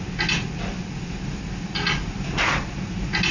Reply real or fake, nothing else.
real